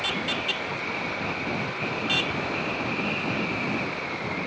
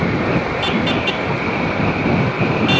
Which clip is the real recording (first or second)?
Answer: first